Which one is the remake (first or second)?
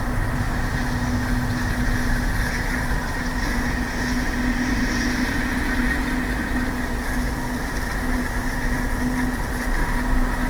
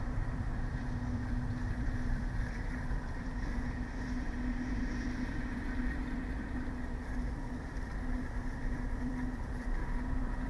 second